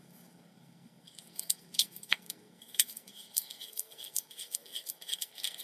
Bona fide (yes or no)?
no